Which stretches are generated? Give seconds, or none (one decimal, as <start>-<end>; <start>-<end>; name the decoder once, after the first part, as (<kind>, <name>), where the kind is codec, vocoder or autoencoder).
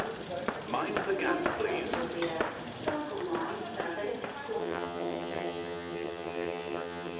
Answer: 4.6-7.2 (vocoder, HiFi-GAN)